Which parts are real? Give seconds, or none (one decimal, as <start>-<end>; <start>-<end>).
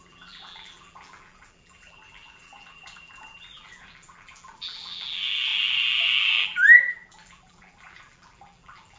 none